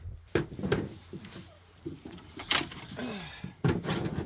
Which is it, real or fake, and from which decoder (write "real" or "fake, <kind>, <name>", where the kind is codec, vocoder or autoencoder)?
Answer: real